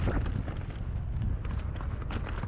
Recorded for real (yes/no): yes